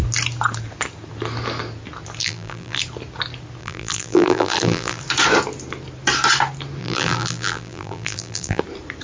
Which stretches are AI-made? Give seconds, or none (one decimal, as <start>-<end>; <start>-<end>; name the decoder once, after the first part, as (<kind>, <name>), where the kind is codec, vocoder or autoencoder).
2.2-2.8 (vocoder, BigVGAN v2); 3.6-5.0; 6.8-8.6